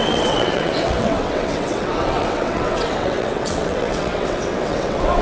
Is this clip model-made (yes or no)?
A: yes